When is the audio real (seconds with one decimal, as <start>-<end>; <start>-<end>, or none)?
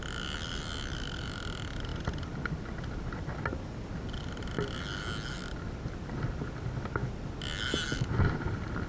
0.0-8.9